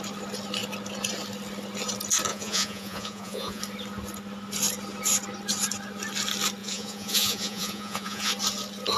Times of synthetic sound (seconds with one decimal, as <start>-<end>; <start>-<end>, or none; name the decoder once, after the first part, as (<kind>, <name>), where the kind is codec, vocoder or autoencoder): 2.3-3.6 (vocoder, Vocos); 6.6-8.3